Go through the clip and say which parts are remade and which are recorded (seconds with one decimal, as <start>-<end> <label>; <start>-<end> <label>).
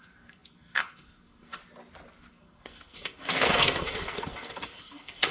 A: 0.0-1.6 remade; 1.6-2.3 recorded; 2.3-5.3 remade